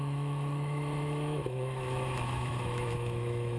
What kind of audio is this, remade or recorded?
remade